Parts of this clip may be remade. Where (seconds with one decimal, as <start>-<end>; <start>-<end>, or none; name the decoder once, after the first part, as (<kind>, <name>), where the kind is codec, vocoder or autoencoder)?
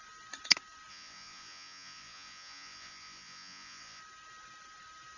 0.9-4.0 (vocoder, Vocos)